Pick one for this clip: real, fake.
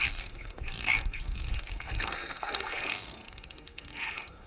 fake